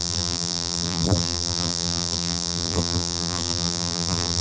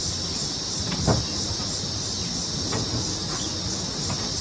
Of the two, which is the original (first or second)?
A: second